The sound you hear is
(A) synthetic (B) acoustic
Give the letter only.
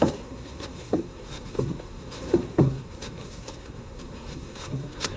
A